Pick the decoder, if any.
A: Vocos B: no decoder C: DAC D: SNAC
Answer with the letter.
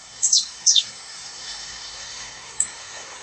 D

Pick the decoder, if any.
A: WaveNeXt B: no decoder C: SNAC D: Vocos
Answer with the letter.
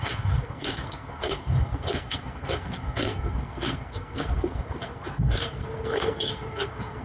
C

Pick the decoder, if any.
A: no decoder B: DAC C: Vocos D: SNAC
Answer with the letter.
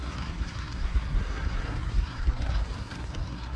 D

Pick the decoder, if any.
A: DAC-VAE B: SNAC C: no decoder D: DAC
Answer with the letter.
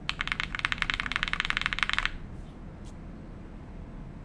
C